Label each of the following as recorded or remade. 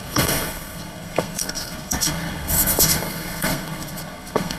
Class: remade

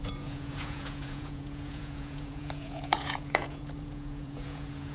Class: remade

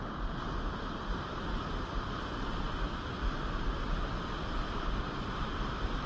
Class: recorded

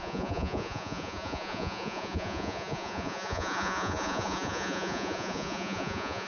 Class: remade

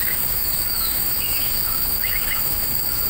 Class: remade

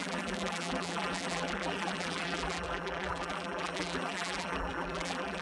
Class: remade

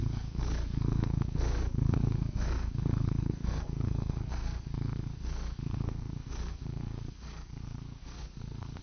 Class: remade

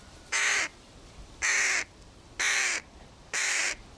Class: remade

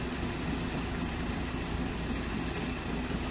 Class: recorded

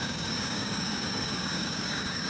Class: remade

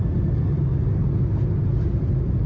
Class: recorded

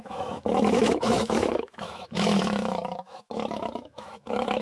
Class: remade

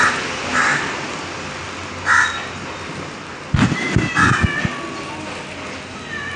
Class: recorded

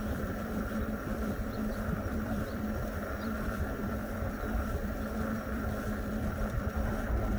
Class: remade